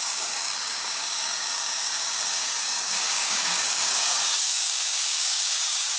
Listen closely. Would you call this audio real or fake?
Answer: fake